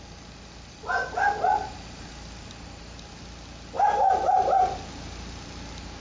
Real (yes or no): yes